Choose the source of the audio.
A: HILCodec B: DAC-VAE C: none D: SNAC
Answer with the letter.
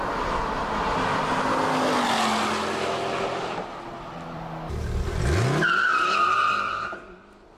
C